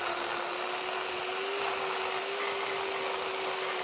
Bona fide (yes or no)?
yes